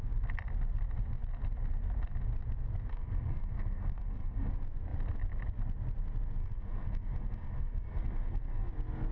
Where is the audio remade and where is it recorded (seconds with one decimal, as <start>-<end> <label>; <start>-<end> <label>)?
0.0-2.9 recorded; 2.9-4.5 remade; 4.5-6.4 recorded; 6.4-8.7 remade; 8.7-9.1 recorded